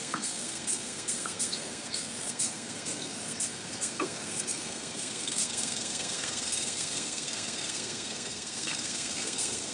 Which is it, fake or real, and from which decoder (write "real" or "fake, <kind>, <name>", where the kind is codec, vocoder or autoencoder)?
fake, codec, SNAC